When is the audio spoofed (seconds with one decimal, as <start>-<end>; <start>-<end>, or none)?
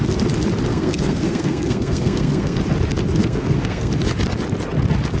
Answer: 0.7-2.6; 3.2-3.9